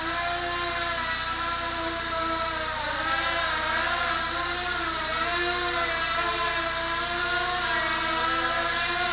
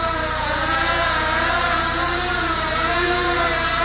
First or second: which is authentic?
first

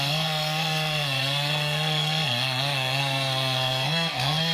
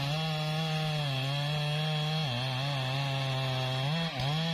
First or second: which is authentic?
second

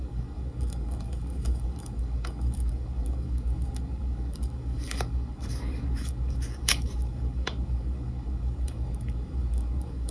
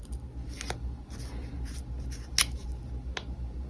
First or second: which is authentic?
second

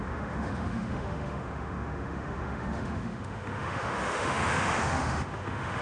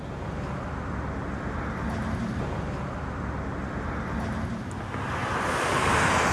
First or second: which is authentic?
second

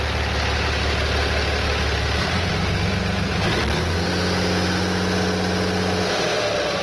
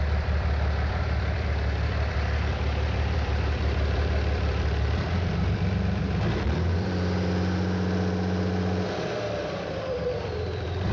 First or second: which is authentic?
first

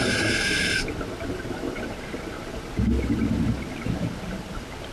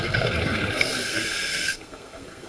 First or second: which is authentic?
first